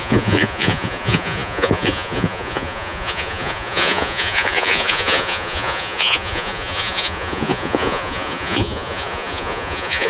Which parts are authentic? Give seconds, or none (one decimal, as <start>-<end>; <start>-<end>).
none